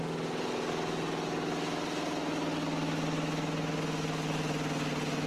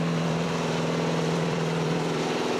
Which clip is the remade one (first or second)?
second